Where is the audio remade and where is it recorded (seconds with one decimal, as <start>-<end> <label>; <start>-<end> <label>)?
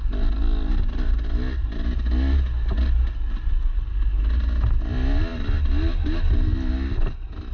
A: 0.0-7.5 recorded